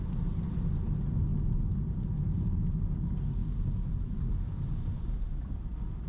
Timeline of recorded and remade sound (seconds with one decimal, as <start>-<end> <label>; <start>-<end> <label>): 0.0-3.4 recorded; 3.4-4.6 remade; 4.6-6.1 recorded